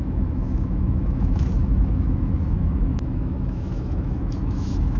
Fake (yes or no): yes